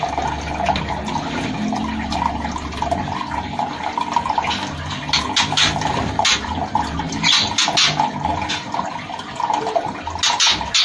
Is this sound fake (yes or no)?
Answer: no